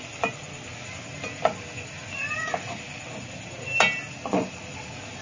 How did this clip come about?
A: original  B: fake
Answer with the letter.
A